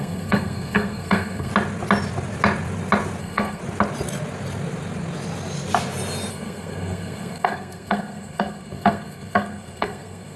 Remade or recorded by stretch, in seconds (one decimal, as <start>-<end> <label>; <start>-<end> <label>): 0.0-1.5 remade; 1.5-3.2 recorded; 3.2-3.6 remade; 3.6-6.3 recorded; 6.3-10.4 remade

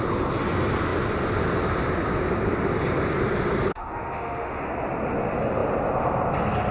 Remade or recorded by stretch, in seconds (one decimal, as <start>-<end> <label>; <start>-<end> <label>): 0.0-3.7 recorded; 3.7-4.6 remade; 4.6-6.7 recorded